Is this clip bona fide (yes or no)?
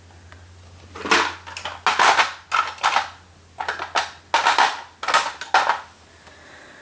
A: yes